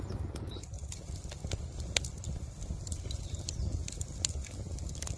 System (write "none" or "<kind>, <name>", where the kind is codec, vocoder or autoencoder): none